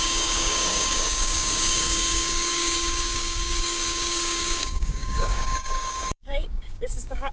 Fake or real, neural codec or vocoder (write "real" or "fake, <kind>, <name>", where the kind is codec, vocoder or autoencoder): fake, codec, DAC